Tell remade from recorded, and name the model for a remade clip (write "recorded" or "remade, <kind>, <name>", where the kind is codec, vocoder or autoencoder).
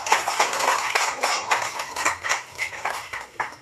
remade, codec, SNAC